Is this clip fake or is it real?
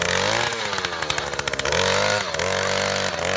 real